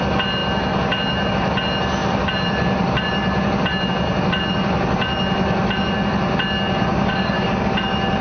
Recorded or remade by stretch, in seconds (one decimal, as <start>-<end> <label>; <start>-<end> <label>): 0.0-6.9 recorded; 6.9-7.7 remade; 7.7-8.2 recorded